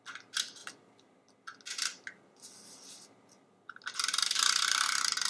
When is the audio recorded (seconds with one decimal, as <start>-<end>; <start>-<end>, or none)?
0.0-5.3